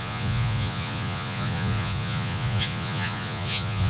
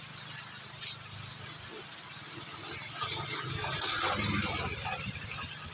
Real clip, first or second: second